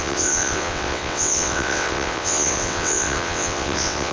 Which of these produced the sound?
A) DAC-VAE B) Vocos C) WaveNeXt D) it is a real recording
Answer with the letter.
C